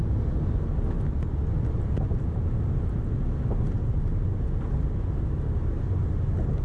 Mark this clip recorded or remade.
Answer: recorded